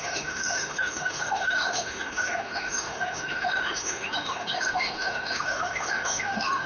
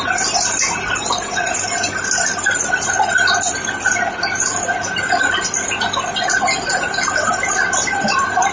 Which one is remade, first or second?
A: first